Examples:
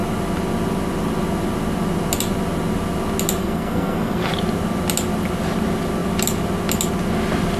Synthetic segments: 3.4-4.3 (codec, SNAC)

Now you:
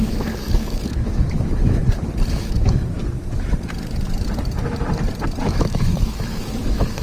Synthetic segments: 0.0-1.8 (autoencoder, DAC-VAE); 2.3-3.0; 5.4-7.0

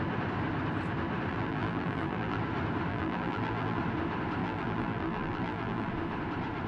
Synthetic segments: 1.3-2.4 (vocoder, BigVGAN v2); 2.9-3.8; 4.4-5.9

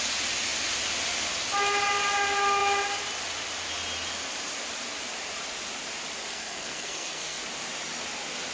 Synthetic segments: 6.3-7.4 (codec, SNAC)